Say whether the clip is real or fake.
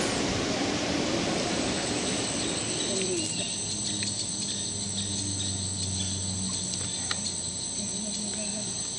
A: real